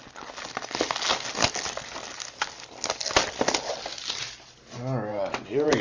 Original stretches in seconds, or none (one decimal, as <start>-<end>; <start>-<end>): 0.0-5.1